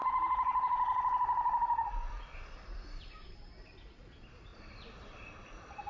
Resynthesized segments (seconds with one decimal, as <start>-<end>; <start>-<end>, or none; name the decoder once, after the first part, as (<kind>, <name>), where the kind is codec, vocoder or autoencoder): 0.0-3.4 (vocoder, BigVGAN v2); 4.5-5.9